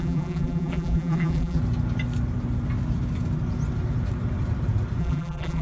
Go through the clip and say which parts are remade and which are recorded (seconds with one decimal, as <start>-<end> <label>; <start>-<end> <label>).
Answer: 0.0-1.6 remade; 1.6-5.0 recorded; 5.0-5.6 remade